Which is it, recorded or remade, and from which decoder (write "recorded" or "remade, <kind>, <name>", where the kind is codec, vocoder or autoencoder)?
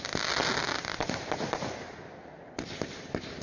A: recorded